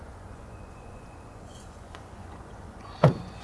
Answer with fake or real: fake